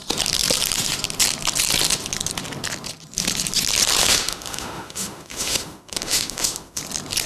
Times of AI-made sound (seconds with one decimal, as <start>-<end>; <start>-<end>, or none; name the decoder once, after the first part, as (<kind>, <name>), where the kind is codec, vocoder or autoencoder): 4.0-6.8 (autoencoder, DAC-VAE)